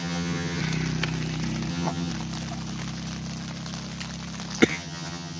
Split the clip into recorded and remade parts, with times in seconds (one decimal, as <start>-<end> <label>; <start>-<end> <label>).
0.0-0.6 remade; 0.6-1.7 recorded; 1.7-2.1 remade; 2.1-4.7 recorded; 4.7-5.4 remade